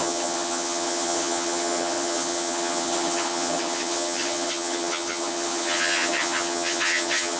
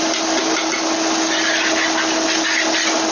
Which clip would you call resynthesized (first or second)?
first